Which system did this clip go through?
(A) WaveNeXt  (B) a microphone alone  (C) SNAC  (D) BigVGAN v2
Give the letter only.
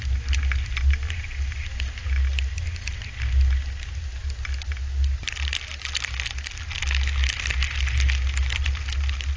B